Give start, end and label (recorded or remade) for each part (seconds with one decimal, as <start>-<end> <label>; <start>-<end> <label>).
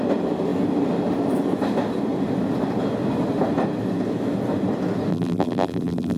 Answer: 0.0-5.1 recorded; 5.1-6.2 remade